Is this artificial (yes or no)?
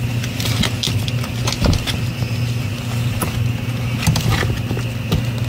no